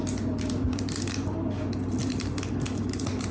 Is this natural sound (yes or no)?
yes